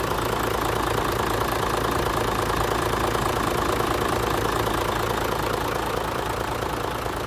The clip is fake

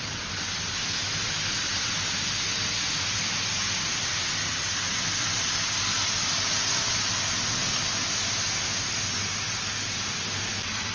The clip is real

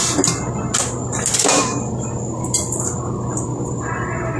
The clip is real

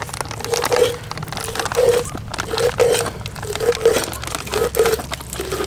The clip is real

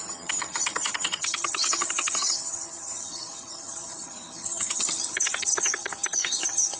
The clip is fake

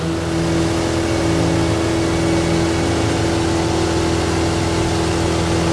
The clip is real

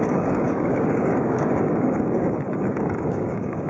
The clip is fake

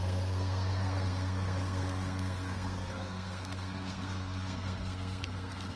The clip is fake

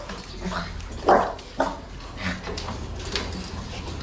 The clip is real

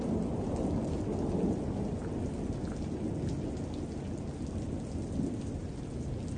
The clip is real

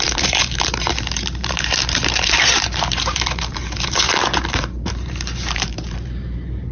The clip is fake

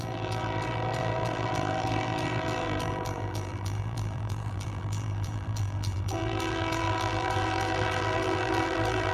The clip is fake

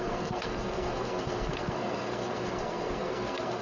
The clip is fake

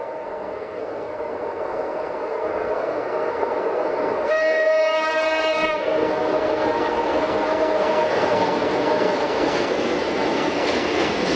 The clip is fake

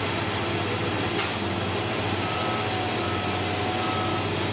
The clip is real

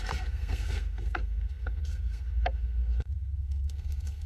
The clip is fake